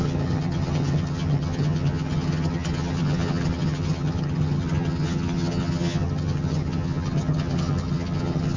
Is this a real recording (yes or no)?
no